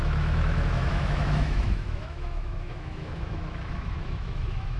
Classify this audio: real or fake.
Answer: fake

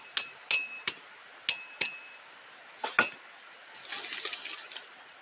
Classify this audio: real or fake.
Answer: real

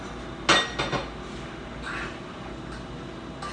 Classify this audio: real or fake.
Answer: real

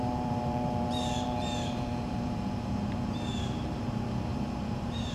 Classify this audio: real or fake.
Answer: fake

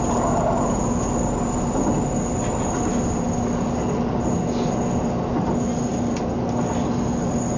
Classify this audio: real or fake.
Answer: real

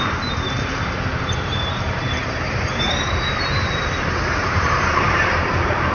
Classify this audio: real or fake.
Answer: fake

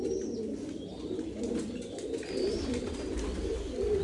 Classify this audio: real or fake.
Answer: real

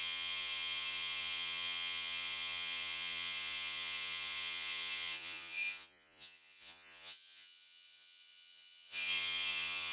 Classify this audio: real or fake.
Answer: fake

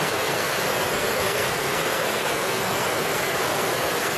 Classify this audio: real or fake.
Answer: fake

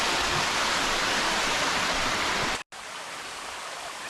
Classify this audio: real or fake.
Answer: real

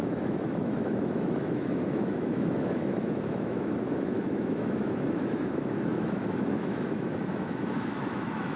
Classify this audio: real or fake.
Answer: fake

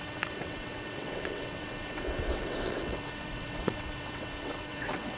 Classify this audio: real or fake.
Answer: fake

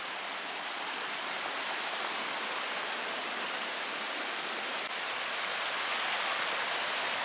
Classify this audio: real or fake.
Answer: real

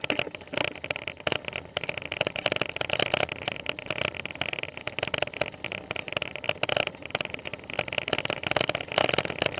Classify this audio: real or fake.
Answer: real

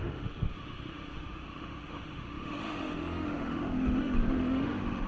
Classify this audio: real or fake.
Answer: fake